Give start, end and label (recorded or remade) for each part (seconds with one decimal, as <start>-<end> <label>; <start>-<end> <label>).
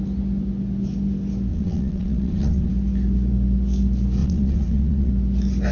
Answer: 0.0-1.5 recorded; 1.5-2.7 remade; 2.7-4.2 recorded; 4.2-5.1 remade; 5.1-5.7 recorded